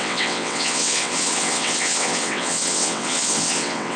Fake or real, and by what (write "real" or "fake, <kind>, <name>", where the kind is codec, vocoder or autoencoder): fake, vocoder, WaveNeXt